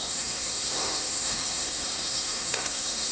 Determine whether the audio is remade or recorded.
remade